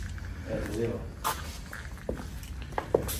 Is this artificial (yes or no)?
no